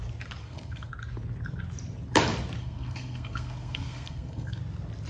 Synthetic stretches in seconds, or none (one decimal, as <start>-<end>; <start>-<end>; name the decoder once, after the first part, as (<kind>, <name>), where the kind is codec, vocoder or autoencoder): 0.4-0.9 (codec, SNAC); 2.6-4.6